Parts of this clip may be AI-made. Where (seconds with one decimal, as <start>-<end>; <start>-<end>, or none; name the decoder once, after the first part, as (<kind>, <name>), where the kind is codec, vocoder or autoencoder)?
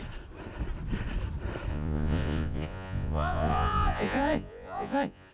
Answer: 1.7-5.3 (vocoder, Vocos)